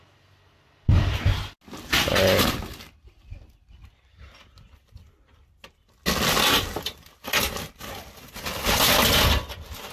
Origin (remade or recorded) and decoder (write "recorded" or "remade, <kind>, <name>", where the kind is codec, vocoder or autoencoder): recorded